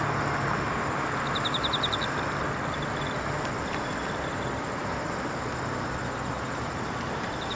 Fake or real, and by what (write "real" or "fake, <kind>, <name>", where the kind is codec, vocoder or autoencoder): real